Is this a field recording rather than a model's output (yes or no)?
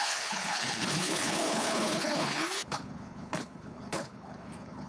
no